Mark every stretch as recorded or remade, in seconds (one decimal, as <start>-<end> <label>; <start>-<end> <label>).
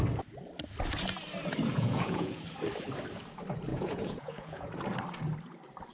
0.0-1.7 recorded; 1.7-2.4 remade; 2.4-3.7 recorded; 3.7-4.7 remade; 4.7-5.9 recorded